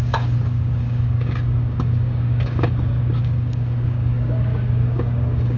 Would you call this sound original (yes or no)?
no